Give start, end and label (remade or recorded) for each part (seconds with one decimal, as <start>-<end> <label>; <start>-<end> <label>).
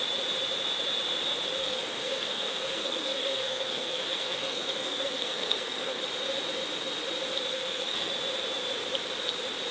0.0-1.6 recorded; 1.6-6.0 remade; 6.0-7.5 recorded; 7.5-8.1 remade; 8.1-9.7 recorded